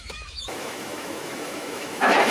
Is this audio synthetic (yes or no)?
yes